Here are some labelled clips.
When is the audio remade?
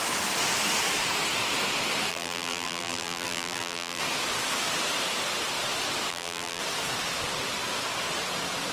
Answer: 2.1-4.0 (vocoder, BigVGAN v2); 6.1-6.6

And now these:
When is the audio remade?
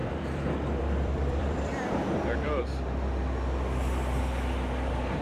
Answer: 0.0-2.6 (vocoder, BigVGAN v2)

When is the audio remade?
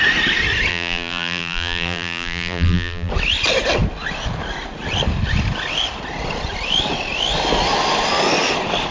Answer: 0.7-3.1 (vocoder, BigVGAN v2)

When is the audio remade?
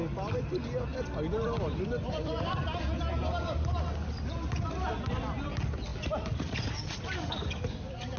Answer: 0.9-2.5 (vocoder, BigVGAN v2); 5.9-7.3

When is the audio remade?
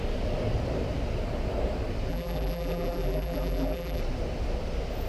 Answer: 2.1-4.0 (vocoder, BigVGAN v2)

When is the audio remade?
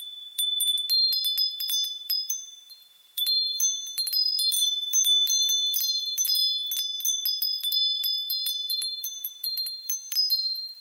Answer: 0.0-0.7 (vocoder, BigVGAN v2); 1.5-6.4; 7.5-10.8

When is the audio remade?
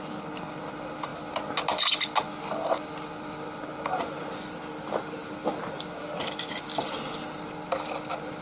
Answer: none